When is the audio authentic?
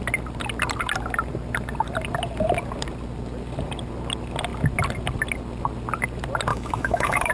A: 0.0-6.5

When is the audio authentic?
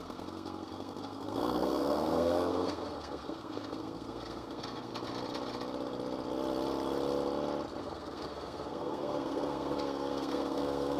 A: 4.9-7.8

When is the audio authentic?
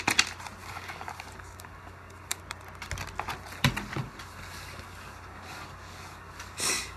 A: 0.0-0.6; 2.4-4.0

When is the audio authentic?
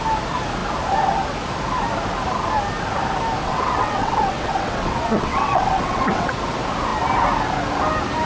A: 0.0-3.4; 6.3-8.3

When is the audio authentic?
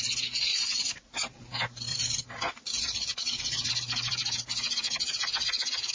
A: 0.0-0.5; 1.1-1.9; 3.7-5.9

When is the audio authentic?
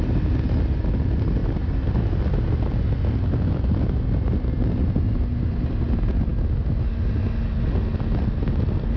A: 0.0-9.0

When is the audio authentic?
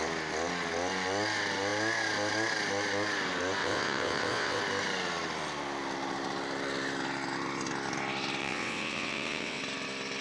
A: 0.0-3.6; 4.6-8.4; 9.6-10.2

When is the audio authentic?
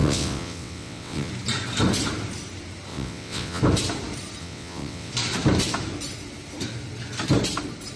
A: 1.3-2.9; 3.6-4.4; 5.1-8.0